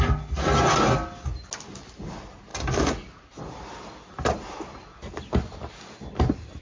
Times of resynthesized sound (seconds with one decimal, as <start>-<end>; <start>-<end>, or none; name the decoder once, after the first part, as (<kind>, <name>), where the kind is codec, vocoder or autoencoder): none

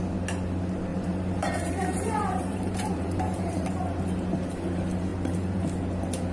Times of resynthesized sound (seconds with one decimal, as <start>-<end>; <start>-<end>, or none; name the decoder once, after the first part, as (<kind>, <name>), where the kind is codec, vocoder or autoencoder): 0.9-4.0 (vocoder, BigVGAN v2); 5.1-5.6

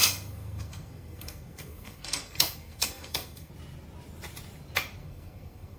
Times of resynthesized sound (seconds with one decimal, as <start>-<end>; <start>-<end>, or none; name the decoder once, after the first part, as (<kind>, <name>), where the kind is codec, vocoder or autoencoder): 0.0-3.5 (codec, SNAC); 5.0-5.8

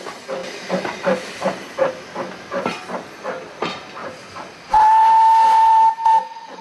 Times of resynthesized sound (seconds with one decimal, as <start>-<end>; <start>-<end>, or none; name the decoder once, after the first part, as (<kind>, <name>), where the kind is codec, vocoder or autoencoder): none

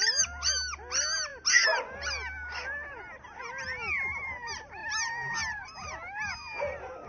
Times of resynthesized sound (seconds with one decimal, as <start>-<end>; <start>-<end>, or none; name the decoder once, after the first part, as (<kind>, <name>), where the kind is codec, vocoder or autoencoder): none

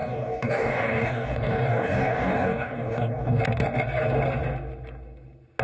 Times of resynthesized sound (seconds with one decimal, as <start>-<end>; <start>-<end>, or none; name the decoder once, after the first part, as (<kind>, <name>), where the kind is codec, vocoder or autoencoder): 0.0-3.4 (codec, DAC)